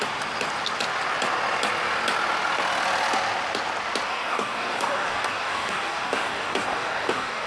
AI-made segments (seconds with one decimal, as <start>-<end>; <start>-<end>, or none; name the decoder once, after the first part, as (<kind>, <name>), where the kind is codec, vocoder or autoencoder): 4.1-7.5 (codec, DAC)

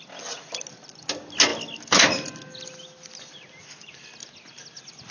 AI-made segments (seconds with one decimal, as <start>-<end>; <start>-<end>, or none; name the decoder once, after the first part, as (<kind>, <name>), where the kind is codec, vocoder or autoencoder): none

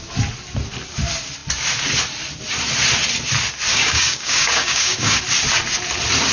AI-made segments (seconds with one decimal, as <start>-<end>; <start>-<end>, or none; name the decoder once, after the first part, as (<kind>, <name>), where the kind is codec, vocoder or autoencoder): 3.7-5.2 (codec, DAC)